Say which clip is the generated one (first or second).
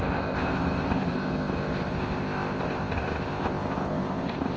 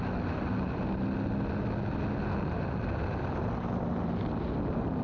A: first